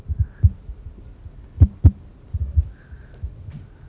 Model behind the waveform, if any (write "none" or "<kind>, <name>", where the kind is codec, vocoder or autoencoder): none